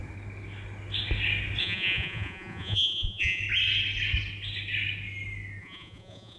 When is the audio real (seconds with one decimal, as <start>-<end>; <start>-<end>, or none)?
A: 0.0-1.6; 3.4-5.6